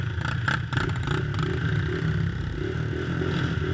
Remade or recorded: recorded